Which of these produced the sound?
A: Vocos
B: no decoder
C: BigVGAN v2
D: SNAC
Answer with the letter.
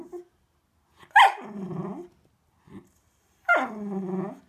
B